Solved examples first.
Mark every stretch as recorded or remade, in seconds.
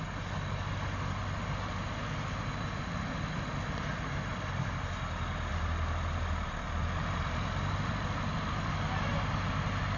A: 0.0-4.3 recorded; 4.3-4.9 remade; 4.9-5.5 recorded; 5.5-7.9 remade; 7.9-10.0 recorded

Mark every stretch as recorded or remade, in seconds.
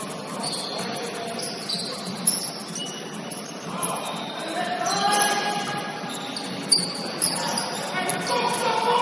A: 0.0-9.0 recorded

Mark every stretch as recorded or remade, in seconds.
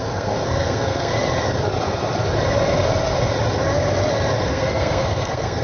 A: 0.0-1.1 remade; 1.1-4.5 recorded; 4.5-5.6 remade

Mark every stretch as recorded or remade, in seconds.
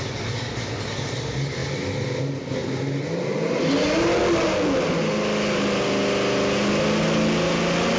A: 0.0-8.0 recorded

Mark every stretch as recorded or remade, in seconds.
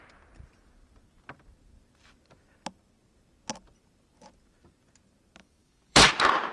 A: 0.0-5.4 recorded; 5.4-6.1 remade; 6.1-6.5 recorded